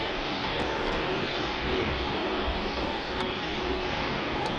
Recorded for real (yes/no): no